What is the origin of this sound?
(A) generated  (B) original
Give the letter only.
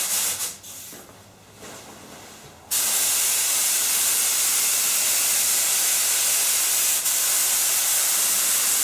B